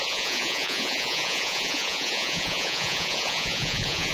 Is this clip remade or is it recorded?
remade